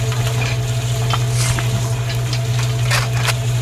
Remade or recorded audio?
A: recorded